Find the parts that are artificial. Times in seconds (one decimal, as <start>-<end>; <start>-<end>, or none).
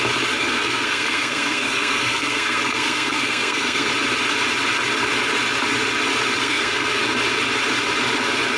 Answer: 0.4-3.9; 6.4-7.0